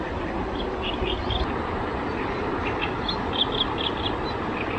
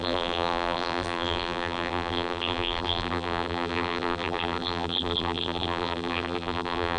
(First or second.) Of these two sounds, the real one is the first